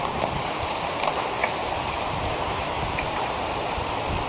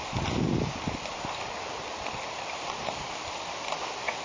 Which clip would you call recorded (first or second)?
second